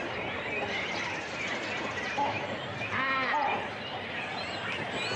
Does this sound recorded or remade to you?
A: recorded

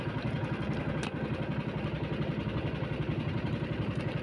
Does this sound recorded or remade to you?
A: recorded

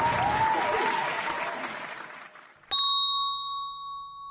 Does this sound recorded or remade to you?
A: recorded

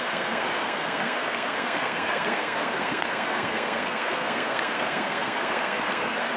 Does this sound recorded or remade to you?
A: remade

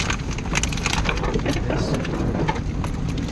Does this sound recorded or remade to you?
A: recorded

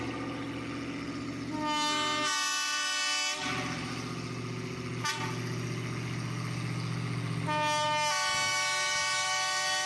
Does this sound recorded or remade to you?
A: recorded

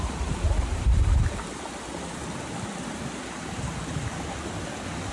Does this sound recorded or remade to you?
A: recorded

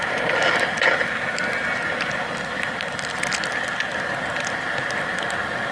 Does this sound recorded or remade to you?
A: recorded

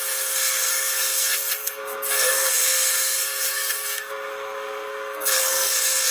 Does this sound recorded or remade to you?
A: remade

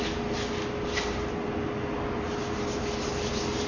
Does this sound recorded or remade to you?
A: recorded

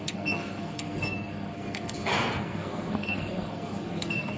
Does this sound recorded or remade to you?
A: remade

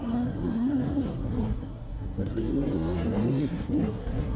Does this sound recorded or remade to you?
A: remade